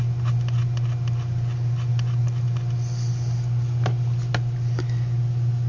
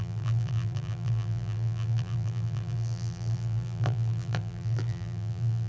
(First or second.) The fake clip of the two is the second